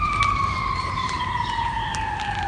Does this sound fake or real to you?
fake